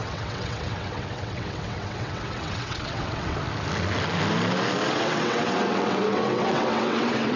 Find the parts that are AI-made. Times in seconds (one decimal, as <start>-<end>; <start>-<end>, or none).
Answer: 0.0-3.4; 4.9-7.4